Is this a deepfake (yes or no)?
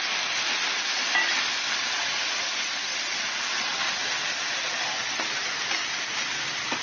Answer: no